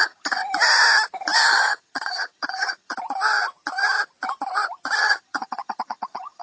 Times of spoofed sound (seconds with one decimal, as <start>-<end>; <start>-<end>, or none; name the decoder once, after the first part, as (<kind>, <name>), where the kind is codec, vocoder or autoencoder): 0.0-0.4 (vocoder, HiFi-GAN); 1.5-2.9; 5.0-6.4